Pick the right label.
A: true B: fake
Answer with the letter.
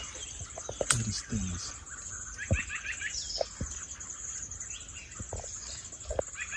A